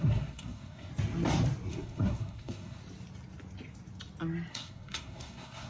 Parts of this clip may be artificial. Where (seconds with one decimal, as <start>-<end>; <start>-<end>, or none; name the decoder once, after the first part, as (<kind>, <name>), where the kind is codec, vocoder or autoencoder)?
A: 0.0-0.9 (codec, SNAC); 1.7-2.8; 4.5-5.7